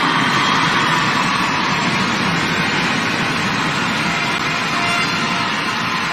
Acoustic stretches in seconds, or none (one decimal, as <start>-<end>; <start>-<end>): 0.0-1.3; 1.8-6.1